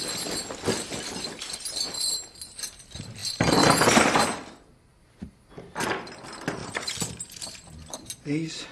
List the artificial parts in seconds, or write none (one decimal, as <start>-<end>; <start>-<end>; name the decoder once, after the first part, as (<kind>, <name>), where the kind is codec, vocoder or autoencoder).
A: 6.6-8.7 (vocoder, BigVGAN v2)